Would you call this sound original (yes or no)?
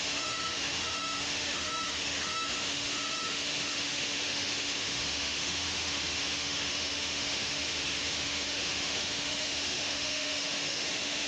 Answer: no